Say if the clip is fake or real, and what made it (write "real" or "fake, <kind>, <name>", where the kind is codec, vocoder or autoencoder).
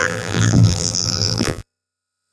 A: fake, vocoder, BigVGAN v2